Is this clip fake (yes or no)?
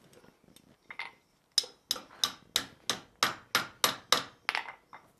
no